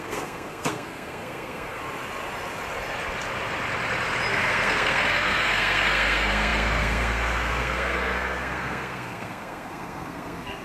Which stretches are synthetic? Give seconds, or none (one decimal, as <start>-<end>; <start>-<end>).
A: 0.0-1.8; 4.3-10.6